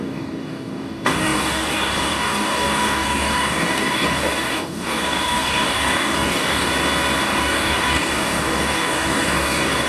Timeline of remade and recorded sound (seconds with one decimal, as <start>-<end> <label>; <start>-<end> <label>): 0.0-6.7 remade; 6.7-7.2 recorded; 7.2-9.9 remade